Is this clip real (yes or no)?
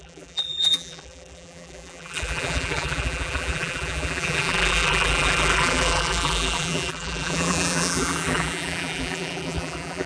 no